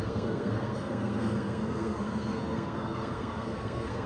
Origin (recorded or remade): remade